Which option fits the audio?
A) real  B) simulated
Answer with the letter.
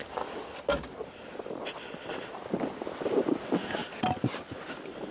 A